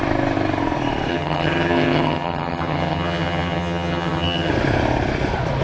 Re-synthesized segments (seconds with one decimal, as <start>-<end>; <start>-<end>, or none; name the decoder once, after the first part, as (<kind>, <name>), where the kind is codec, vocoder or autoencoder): 1.1-4.5 (vocoder, HiFi-GAN)